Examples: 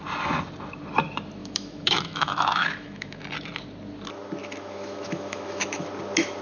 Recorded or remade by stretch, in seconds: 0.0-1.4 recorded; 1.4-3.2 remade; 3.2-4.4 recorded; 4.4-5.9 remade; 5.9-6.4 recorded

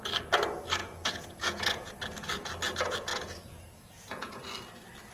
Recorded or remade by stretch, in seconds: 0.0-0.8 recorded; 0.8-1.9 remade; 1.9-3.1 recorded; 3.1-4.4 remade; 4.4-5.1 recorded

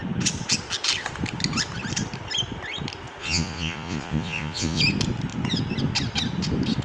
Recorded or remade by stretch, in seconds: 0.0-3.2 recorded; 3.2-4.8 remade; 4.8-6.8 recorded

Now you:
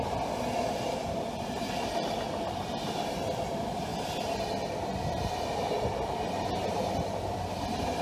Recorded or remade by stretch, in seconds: 0.0-8.0 recorded

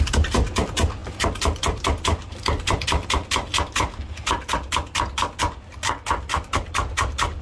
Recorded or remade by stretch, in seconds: 0.0-7.4 recorded

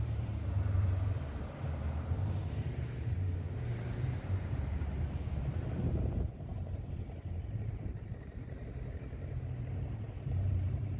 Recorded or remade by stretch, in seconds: 0.0-11.0 remade

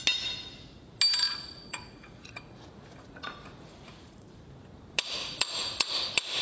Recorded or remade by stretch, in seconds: 0.0-1.4 recorded; 1.4-4.4 remade; 4.4-5.2 recorded; 5.2-5.9 remade; 5.9-6.4 recorded